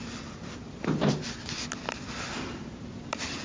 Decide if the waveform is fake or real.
fake